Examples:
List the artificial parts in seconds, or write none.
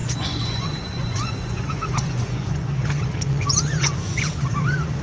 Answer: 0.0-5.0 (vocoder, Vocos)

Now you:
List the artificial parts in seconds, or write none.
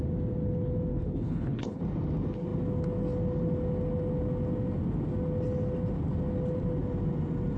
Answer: 0.9-1.8 (codec, HILCodec)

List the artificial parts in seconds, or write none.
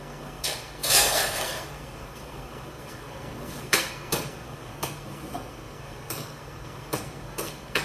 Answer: 0.0-7.8 (codec, SNAC)